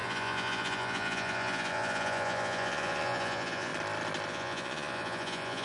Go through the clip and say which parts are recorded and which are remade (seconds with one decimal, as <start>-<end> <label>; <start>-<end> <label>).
0.0-3.7 remade; 3.7-4.3 recorded; 4.3-5.6 remade